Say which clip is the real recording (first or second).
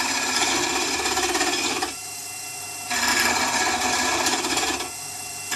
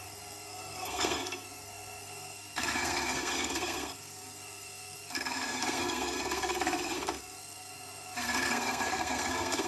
first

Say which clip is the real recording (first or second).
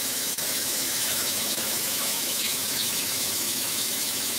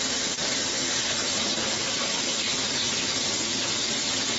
second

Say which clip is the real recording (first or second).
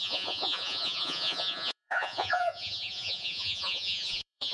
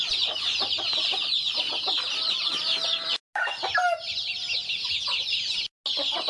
second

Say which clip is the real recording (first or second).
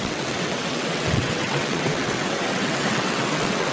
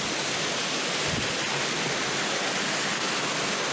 second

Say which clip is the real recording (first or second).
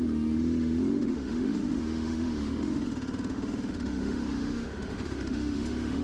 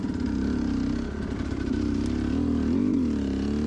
second